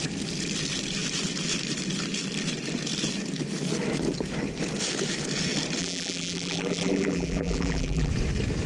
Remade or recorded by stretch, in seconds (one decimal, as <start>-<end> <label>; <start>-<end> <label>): 0.0-5.8 recorded; 5.8-8.1 remade; 8.1-8.7 recorded